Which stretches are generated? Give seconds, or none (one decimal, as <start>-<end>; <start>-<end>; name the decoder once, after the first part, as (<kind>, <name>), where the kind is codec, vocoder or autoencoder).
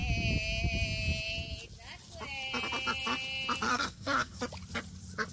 3.7-4.4 (codec, SNAC)